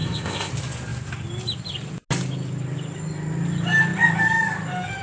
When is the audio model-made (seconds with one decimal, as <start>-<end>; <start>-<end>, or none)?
0.0-0.5